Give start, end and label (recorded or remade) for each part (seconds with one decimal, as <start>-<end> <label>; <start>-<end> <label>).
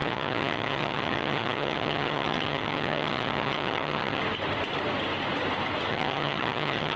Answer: 0.0-4.2 remade; 4.2-5.9 recorded; 5.9-7.0 remade